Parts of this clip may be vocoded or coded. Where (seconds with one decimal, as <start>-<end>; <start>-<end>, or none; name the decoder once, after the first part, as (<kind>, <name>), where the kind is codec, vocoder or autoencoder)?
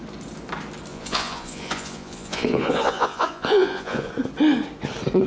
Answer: 0.9-4.1 (vocoder, Vocos)